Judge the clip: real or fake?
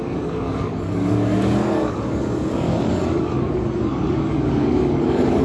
fake